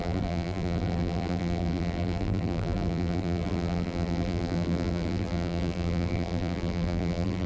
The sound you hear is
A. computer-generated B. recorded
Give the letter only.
A